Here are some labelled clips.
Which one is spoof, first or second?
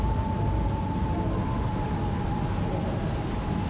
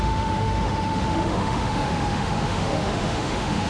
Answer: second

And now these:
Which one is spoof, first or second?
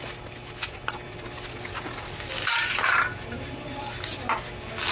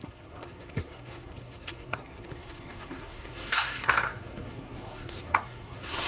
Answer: second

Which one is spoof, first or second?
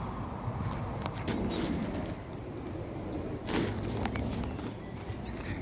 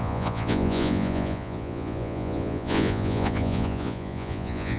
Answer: second